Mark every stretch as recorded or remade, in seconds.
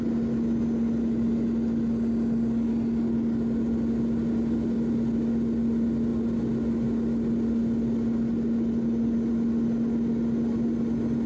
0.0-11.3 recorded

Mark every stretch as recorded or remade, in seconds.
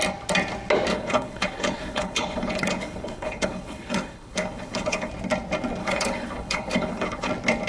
0.0-0.9 recorded; 0.9-5.1 remade; 5.1-5.8 recorded; 5.8-7.3 remade; 7.3-7.7 recorded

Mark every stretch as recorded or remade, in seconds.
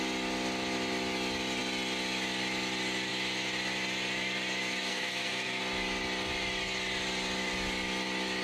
0.0-4.9 recorded; 4.9-5.6 remade; 5.6-8.4 recorded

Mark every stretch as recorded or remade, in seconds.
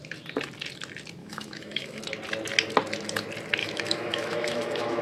0.0-1.2 recorded; 1.2-2.0 remade; 2.0-3.6 recorded; 3.6-5.0 remade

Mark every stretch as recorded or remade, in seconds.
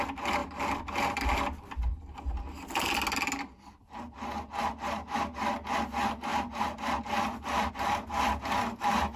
0.0-9.2 recorded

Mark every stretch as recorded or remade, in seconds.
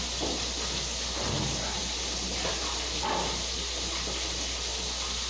0.0-5.3 recorded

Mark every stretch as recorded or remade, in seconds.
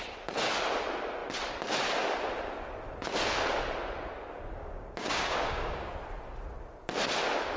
0.0-4.6 recorded; 4.6-5.9 remade; 5.9-7.6 recorded